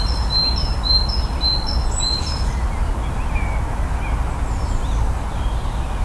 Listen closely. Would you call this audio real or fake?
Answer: real